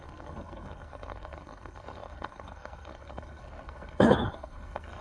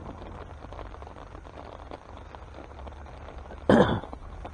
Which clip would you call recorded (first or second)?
second